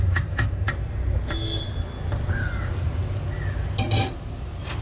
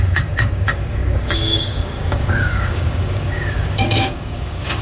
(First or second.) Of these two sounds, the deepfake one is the second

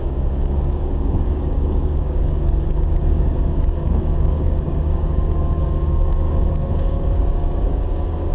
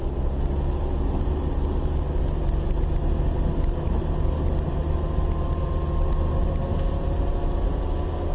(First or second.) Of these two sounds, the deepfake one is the first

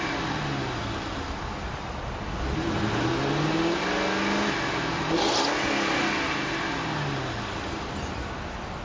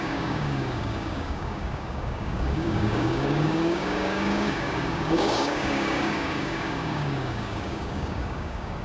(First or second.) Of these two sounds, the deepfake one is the second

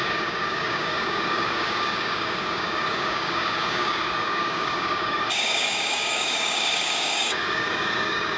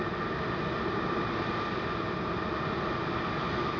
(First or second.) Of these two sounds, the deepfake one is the first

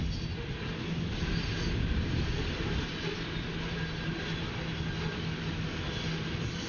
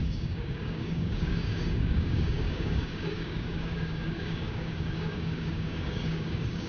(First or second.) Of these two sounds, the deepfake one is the second